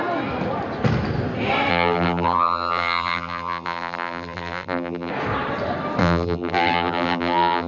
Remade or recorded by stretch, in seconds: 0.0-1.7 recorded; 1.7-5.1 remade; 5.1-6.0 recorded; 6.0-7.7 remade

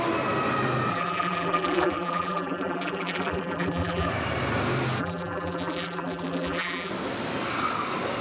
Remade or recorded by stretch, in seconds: 0.0-0.9 recorded; 0.9-4.1 remade; 4.1-5.0 recorded; 5.0-6.9 remade; 6.9-8.2 recorded